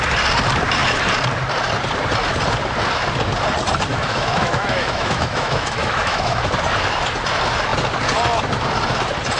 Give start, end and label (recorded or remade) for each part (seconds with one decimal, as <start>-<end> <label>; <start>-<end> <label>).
0.0-3.9 recorded; 3.9-6.5 remade; 6.5-9.4 recorded